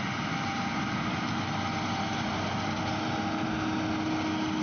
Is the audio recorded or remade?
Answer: recorded